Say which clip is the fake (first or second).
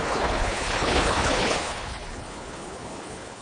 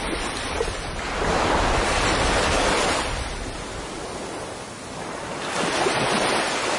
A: first